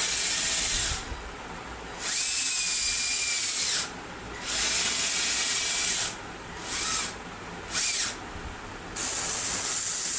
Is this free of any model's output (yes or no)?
yes